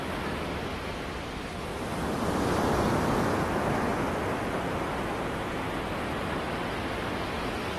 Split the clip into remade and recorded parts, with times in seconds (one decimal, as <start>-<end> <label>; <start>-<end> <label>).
0.0-7.8 recorded

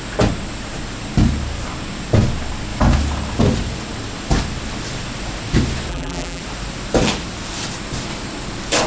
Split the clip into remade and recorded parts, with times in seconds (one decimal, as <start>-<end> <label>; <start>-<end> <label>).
0.0-5.9 recorded; 5.9-6.4 remade; 6.4-8.9 recorded

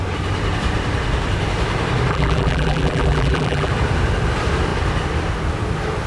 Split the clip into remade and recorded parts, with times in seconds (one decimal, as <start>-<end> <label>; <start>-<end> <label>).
0.0-2.1 recorded; 2.1-3.7 remade; 3.7-6.1 recorded

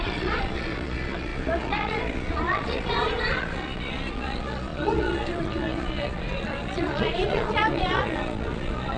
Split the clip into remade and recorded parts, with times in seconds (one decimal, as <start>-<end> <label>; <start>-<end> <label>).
0.0-9.0 remade

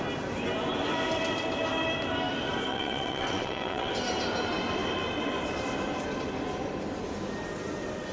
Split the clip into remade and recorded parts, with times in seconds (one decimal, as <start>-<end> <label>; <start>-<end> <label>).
0.0-2.7 recorded; 2.7-3.9 remade; 3.9-8.1 recorded